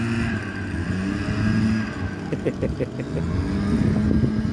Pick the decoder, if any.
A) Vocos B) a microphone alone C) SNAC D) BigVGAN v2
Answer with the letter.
B